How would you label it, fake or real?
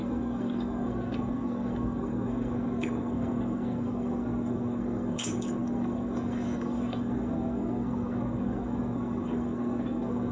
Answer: fake